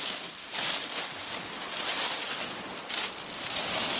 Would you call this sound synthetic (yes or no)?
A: yes